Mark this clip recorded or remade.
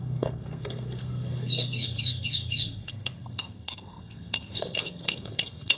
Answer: remade